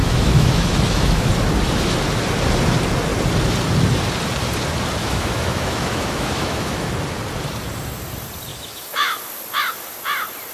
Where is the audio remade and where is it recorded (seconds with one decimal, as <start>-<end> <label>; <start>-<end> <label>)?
0.0-1.3 remade; 1.3-5.0 recorded; 5.0-6.9 remade; 6.9-8.5 recorded; 8.5-9.2 remade; 9.2-10.5 recorded